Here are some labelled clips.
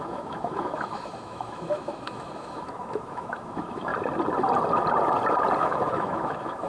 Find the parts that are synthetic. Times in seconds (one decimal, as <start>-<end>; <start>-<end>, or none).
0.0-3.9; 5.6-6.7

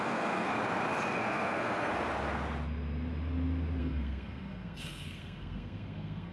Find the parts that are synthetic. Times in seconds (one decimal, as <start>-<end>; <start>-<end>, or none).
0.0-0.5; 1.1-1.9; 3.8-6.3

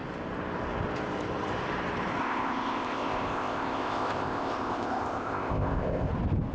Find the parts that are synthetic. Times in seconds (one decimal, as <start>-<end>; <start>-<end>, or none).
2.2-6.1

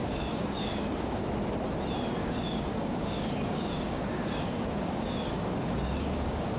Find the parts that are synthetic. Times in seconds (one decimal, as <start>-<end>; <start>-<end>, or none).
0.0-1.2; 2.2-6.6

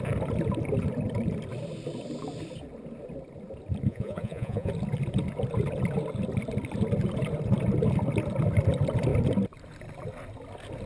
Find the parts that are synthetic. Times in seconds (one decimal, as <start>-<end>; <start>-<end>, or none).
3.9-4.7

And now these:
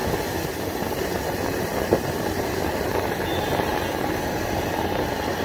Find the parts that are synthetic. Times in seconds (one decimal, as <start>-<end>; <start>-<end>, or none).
none

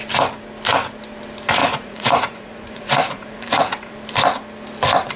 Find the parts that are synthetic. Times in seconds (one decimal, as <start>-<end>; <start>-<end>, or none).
1.6-3.9

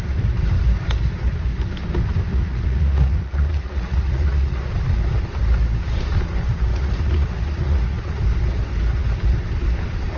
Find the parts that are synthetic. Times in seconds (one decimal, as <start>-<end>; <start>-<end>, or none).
2.3-4.7; 6.7-8.2